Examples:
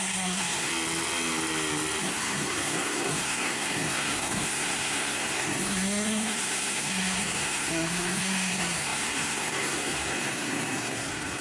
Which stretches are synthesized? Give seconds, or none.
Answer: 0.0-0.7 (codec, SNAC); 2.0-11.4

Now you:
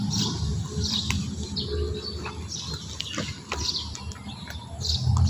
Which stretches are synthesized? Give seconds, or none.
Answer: none

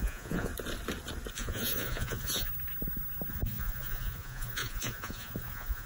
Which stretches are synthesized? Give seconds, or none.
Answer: 0.0-0.5 (vocoder, Vocos); 1.3-2.5; 3.3-5.9

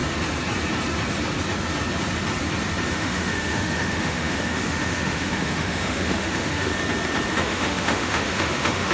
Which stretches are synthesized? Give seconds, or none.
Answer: 2.9-6.7 (autoencoder, DAC-VAE); 7.3-8.9